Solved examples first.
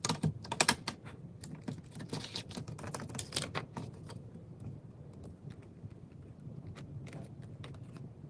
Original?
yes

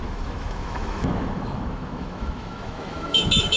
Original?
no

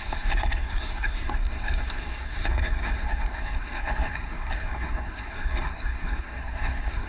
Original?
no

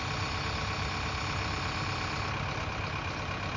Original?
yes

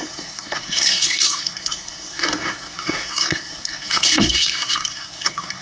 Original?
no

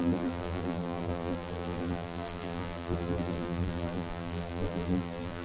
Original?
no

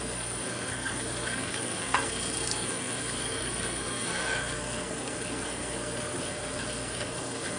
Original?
no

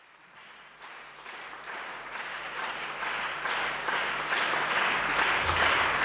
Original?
yes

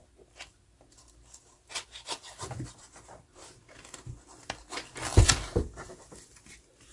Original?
yes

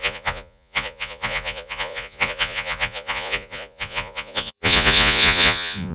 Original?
no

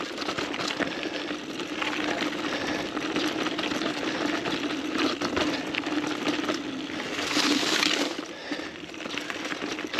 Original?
yes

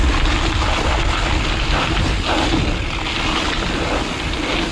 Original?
yes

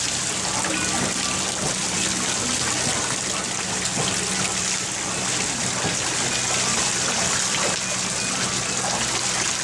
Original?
yes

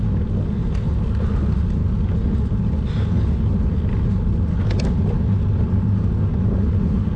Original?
yes